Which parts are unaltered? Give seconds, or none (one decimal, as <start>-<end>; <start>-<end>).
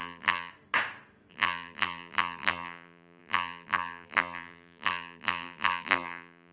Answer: 0.5-1.3